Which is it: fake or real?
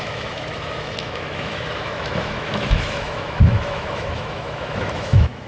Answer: fake